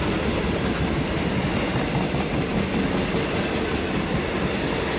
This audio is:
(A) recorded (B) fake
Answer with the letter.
A